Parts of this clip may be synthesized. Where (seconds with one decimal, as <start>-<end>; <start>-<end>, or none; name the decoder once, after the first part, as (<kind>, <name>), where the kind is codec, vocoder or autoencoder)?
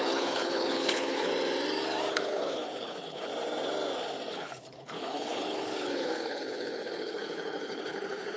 0.0-1.3 (codec, HILCodec); 2.1-3.3; 4.3-8.4